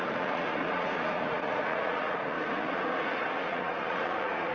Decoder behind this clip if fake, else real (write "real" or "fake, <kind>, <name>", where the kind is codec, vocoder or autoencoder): fake, vocoder, Vocos